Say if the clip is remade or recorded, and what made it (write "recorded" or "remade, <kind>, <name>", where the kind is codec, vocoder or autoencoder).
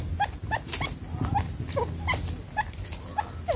recorded